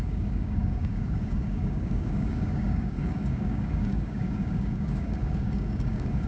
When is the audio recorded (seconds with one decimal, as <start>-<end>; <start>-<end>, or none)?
none